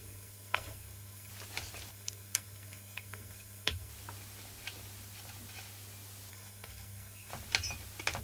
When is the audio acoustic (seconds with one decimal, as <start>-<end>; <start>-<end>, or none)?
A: 1.3-1.9; 3.9-6.3; 7.3-8.2